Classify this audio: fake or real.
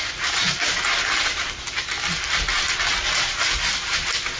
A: real